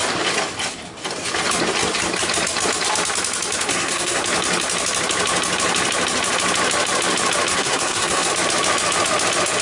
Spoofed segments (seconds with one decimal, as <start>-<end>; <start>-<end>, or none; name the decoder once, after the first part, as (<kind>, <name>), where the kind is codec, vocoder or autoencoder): 3.7-4.2 (codec, SNAC); 7.5-8.3